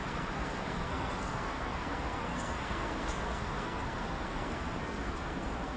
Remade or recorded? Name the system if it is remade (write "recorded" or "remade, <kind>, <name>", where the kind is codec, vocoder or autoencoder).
remade, codec, SNAC